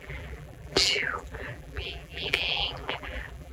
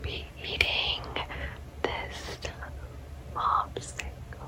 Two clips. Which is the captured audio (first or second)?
second